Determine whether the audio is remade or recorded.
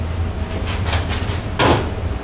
recorded